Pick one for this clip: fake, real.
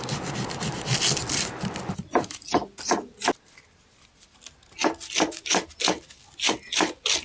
real